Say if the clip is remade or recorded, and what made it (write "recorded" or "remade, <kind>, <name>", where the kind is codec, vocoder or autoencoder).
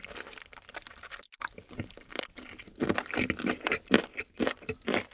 recorded